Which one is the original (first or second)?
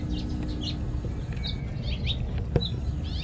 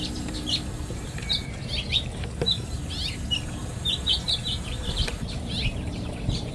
first